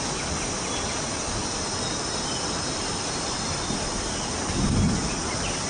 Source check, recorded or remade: recorded